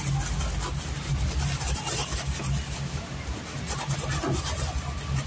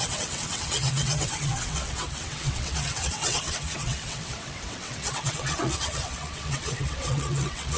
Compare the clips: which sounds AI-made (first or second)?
second